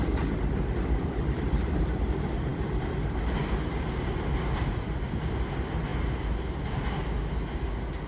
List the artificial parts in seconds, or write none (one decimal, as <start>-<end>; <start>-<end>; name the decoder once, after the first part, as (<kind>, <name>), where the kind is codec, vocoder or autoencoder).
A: none